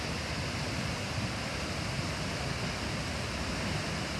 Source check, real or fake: real